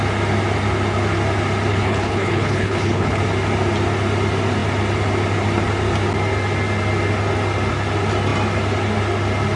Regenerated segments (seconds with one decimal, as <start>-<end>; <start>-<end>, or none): 1.7-3.2